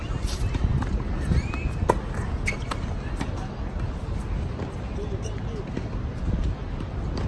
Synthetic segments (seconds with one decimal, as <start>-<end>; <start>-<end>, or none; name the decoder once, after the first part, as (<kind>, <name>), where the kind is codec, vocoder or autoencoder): none